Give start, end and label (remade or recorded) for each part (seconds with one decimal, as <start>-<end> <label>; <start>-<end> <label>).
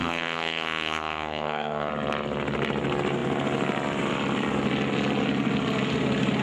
0.0-1.9 remade; 1.9-6.4 recorded